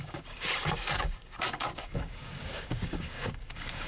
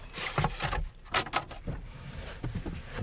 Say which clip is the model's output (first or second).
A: first